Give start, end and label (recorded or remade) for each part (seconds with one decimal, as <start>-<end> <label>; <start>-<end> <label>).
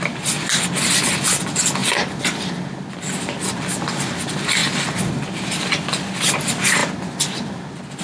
0.0-8.0 recorded